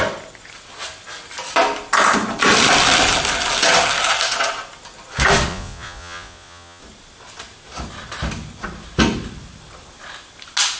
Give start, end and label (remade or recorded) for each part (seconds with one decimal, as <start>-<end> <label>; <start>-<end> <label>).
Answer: 0.0-5.5 recorded; 5.5-6.8 remade; 6.8-10.8 recorded